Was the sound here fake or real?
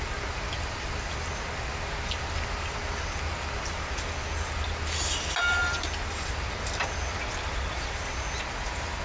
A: real